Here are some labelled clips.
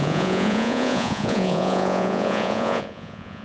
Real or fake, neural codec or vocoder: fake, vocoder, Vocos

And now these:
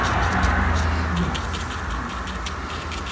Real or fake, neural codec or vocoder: real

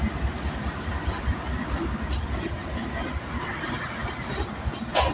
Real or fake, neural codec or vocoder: real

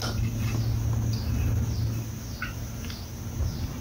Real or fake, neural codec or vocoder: real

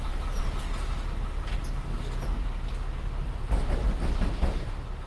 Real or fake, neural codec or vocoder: real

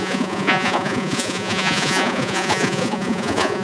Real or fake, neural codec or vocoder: fake, vocoder, Vocos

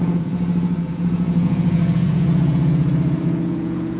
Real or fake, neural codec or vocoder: fake, vocoder, Vocos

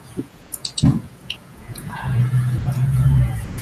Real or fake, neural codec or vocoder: fake, vocoder, Vocos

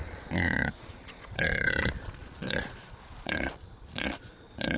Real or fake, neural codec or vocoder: fake, vocoder, Vocos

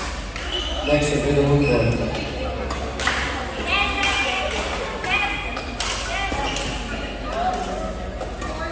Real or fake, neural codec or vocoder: real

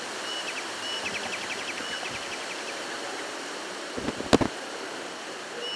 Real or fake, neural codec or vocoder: real